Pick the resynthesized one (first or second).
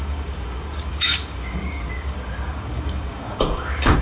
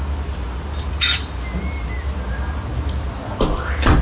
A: first